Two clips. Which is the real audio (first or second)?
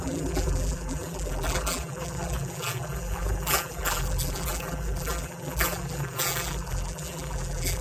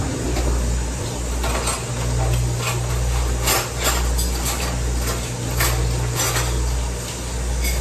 second